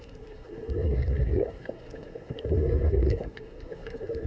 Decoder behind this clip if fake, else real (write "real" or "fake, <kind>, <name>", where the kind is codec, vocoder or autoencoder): fake, codec, SNAC